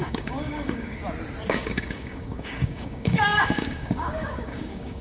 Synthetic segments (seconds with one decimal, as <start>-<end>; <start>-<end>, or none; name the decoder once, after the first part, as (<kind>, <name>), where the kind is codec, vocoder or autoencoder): 0.0-1.0 (codec, DAC); 1.5-5.0